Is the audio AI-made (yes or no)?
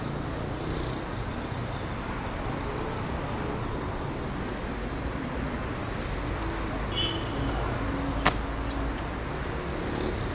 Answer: no